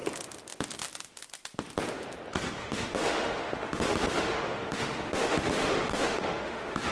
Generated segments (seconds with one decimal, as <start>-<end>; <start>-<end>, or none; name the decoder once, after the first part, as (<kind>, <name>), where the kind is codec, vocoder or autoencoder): 2.6-6.9 (autoencoder, DAC-VAE)